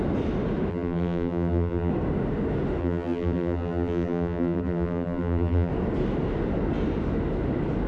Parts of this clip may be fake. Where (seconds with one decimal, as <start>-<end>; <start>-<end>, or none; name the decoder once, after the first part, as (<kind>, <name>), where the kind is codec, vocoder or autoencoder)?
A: 0.7-1.9 (vocoder, BigVGAN v2); 2.8-5.7